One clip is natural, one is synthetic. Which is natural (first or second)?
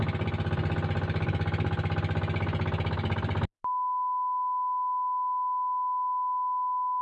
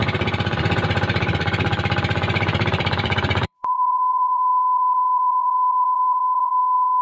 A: first